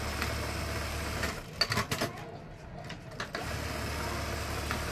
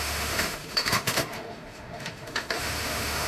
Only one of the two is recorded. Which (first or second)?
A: first